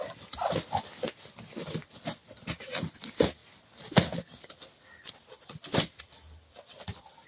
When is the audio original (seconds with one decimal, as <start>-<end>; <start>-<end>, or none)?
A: 0.0-7.3